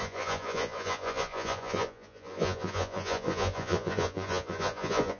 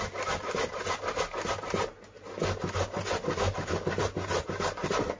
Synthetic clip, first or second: first